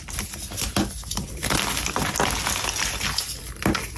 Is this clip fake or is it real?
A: real